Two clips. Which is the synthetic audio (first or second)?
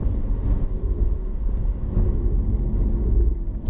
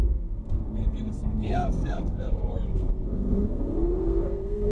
second